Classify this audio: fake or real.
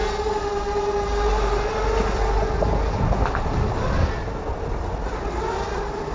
real